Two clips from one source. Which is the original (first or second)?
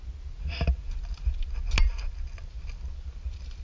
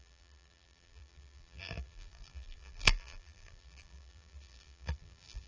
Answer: first